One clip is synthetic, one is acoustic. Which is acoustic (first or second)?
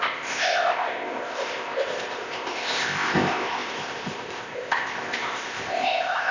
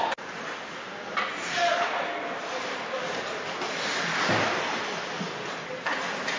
second